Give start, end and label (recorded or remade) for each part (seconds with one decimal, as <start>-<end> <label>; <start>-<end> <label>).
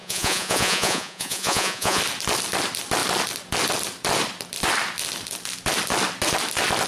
0.0-2.0 remade; 2.0-6.9 recorded